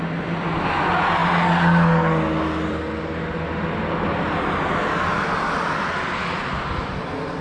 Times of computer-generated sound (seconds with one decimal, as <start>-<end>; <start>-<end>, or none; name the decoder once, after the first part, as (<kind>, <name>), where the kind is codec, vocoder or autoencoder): none